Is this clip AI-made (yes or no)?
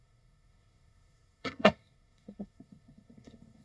yes